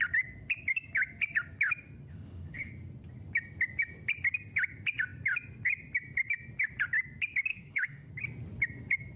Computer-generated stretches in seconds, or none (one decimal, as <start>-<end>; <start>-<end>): 2.1-2.7; 7.5-8.1